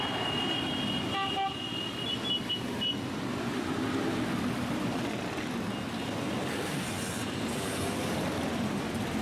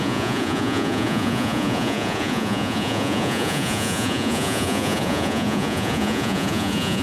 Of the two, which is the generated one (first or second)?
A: second